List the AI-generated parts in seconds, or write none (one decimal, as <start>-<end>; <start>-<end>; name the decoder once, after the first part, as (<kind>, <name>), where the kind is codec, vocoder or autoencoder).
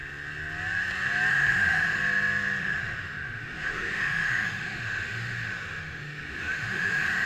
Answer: 1.3-2.0 (autoencoder, DAC-VAE); 2.6-7.3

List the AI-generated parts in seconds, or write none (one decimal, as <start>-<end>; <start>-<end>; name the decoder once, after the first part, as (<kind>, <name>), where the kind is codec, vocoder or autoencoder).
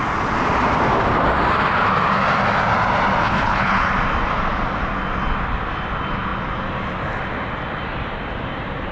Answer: 3.2-3.9 (codec, HILCodec)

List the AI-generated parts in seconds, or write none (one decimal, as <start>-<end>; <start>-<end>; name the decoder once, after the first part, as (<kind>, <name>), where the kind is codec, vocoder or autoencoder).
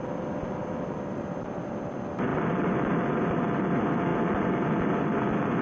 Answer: none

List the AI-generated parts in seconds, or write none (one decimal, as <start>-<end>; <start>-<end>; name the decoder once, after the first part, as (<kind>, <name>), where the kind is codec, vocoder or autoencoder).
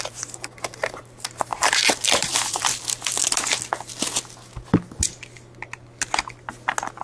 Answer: 1.5-3.0 (vocoder, BigVGAN v2)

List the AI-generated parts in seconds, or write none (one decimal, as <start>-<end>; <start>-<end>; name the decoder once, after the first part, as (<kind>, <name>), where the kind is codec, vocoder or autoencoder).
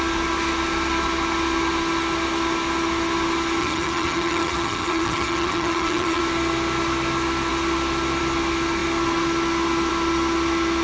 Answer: 3.6-6.2 (vocoder, HiFi-GAN)